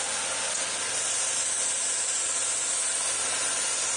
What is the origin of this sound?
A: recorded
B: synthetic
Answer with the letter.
A